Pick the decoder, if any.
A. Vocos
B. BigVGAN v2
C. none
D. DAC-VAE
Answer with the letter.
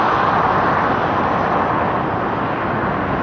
C